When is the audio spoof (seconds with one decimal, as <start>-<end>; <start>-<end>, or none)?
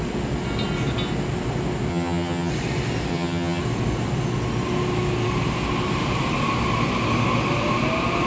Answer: 1.9-2.5; 3.1-3.6